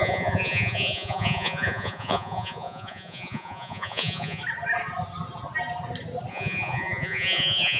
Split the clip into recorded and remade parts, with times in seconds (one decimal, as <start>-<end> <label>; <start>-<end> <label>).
0.0-4.4 remade; 4.4-6.3 recorded; 6.3-7.8 remade